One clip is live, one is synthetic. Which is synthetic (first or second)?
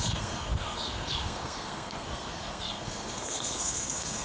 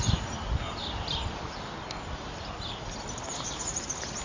first